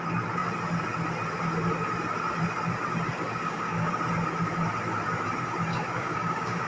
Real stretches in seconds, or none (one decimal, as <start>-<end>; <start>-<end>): 0.0-3.1; 4.0-5.7